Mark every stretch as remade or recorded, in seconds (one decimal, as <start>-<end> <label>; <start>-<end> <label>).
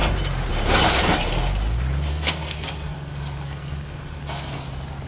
0.0-2.1 recorded; 2.1-4.6 remade; 4.6-5.1 recorded